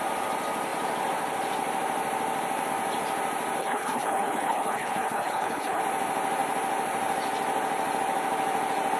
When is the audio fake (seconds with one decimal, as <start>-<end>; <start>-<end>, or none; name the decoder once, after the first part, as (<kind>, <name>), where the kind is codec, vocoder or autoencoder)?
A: 3.6-5.8 (codec, HILCodec)

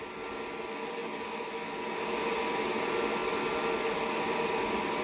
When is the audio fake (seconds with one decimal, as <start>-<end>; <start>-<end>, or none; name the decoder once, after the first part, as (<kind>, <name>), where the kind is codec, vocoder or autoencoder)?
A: none

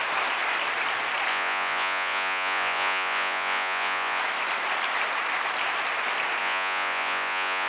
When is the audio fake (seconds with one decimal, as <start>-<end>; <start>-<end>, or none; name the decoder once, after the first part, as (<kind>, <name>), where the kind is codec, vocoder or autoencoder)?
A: 1.3-4.2 (vocoder, Vocos); 6.4-7.7

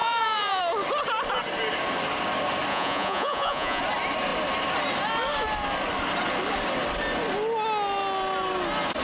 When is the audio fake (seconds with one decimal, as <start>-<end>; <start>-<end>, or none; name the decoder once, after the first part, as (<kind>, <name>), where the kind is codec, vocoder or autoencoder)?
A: 0.0-0.6 (vocoder, Vocos); 2.7-3.8

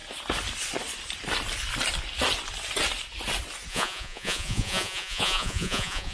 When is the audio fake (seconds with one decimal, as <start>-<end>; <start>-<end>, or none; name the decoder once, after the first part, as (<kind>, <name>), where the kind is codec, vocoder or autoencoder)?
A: 3.7-6.1 (vocoder, Vocos)

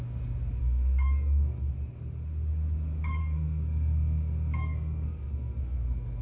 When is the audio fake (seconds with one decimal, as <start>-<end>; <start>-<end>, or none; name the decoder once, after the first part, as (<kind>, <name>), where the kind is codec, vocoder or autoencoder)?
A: 0.6-1.7 (codec, SNAC); 3.2-6.2

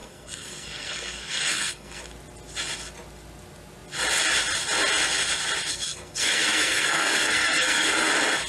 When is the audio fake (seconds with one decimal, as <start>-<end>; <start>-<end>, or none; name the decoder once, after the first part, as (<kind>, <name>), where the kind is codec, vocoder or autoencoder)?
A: 0.0-2.0 (codec, SNAC); 5.7-8.1